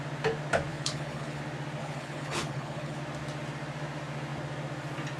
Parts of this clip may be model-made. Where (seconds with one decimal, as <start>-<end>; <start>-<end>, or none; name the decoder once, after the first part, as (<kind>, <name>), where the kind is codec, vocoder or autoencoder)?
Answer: 0.7-1.4 (codec, HILCodec); 1.8-3.0